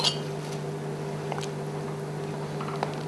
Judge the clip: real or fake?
real